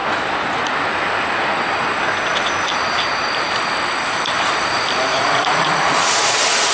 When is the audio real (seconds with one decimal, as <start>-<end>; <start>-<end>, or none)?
0.0-5.1